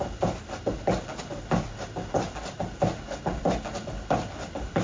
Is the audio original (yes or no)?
yes